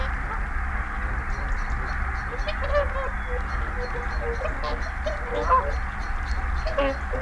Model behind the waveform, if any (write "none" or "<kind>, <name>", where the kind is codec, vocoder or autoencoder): none